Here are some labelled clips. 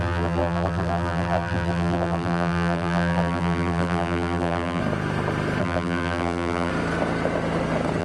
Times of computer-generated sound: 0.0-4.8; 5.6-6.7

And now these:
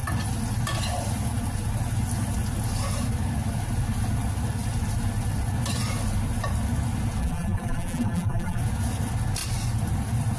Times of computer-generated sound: 7.2-8.6

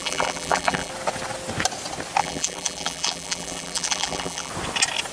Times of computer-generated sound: 0.0-0.9; 2.2-4.5

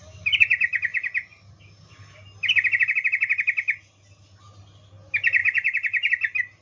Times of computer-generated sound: 5.4-6.1

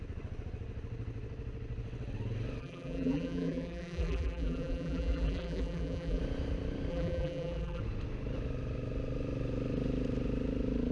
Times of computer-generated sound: 2.6-6.2; 6.9-7.8

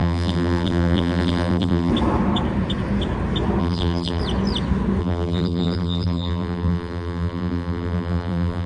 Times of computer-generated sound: 0.0-1.9; 3.6-4.2; 5.0-8.7

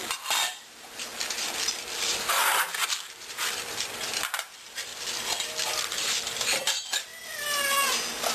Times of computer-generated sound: 0.0-4.9; 5.8-7.1

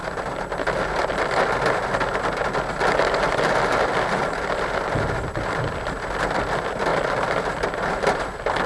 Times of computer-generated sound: 3.3-3.9; 4.9-6.9; 7.9-8.7